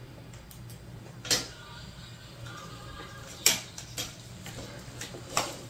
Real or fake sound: real